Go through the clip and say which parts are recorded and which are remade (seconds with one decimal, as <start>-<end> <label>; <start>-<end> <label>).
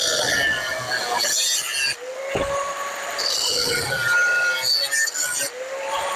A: 0.0-6.2 recorded